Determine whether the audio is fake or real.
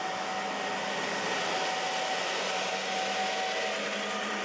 real